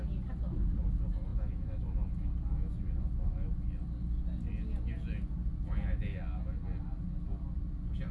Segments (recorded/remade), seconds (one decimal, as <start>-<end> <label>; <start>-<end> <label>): 0.0-8.1 recorded

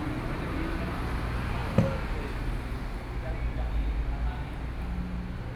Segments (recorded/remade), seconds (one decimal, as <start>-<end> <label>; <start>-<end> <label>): 0.0-5.6 recorded

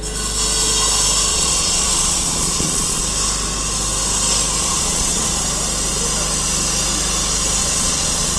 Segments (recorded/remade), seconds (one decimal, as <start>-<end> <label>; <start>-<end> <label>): 0.0-1.3 recorded; 1.3-3.0 remade; 3.0-4.6 recorded; 4.6-5.4 remade; 5.4-7.6 recorded; 7.6-8.4 remade

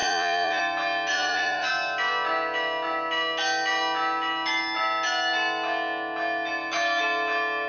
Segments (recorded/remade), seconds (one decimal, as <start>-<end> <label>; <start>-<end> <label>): 0.0-0.6 remade; 0.6-1.1 recorded; 1.1-1.7 remade; 1.7-7.7 recorded

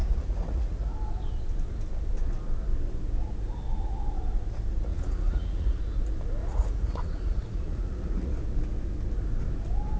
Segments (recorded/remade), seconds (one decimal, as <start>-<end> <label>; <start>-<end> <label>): 0.0-0.9 remade; 0.9-4.9 recorded; 4.9-5.8 remade; 5.8-6.4 recorded; 6.4-8.3 remade; 8.3-10.0 recorded

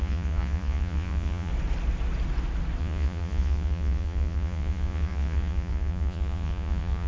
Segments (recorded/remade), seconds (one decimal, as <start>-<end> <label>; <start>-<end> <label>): 0.0-1.5 remade; 1.5-2.8 recorded; 2.8-7.1 remade

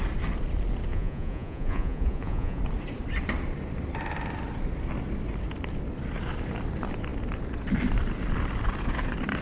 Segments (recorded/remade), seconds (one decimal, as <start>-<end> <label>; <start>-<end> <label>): 0.0-0.9 recorded; 0.9-2.6 remade; 2.6-9.4 recorded

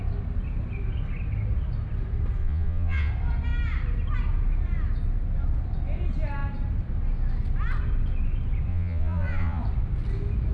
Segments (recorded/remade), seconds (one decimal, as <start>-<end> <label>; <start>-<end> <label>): 0.0-2.4 recorded; 2.4-3.1 remade; 3.1-8.7 recorded; 8.7-9.6 remade; 9.6-10.5 recorded